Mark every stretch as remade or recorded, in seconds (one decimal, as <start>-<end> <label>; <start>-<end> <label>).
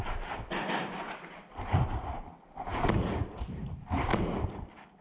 0.0-5.0 recorded